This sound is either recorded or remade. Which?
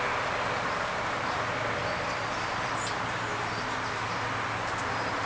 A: recorded